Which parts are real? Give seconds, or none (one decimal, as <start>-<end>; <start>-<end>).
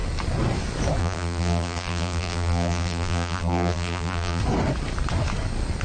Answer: 0.0-1.0; 4.4-5.8